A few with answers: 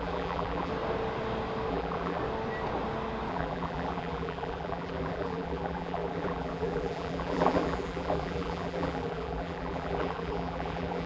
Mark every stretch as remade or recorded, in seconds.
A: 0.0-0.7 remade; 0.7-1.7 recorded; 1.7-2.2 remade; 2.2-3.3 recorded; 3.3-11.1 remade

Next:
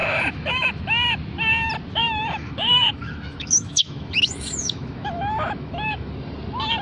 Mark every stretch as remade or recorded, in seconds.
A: 0.0-0.8 remade; 0.8-2.0 recorded; 2.0-6.1 remade; 6.1-6.8 recorded

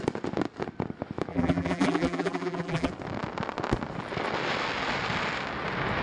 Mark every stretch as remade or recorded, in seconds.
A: 0.0-1.3 recorded; 1.3-2.9 remade; 2.9-6.0 recorded

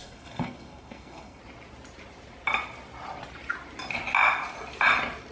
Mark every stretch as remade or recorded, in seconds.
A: 0.0-1.4 remade; 1.4-5.3 recorded